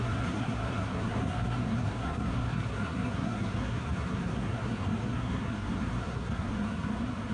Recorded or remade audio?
remade